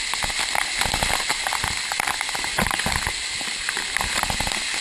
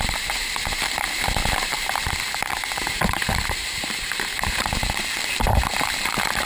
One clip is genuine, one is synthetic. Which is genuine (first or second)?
first